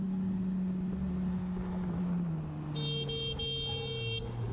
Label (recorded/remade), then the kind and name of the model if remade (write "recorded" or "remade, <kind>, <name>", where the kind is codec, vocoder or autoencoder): recorded